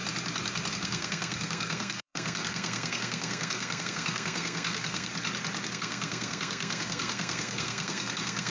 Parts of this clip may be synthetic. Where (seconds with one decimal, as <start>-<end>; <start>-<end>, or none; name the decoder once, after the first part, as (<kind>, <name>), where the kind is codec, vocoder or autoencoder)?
0.7-5.1 (codec, SNAC); 5.7-8.5